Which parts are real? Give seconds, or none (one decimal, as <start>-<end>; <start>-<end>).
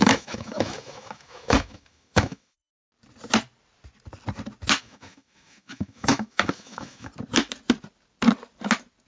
2.7-4.8; 7.1-9.1